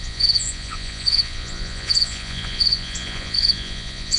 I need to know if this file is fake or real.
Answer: fake